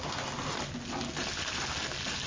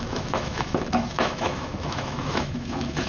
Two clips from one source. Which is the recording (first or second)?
first